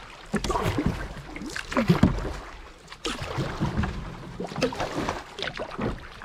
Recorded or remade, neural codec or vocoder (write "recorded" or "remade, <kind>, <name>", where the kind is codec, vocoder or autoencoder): recorded